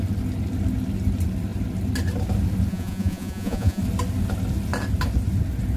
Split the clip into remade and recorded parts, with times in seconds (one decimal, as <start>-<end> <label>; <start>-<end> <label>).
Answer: 0.0-2.7 recorded; 2.7-3.8 remade; 3.8-5.8 recorded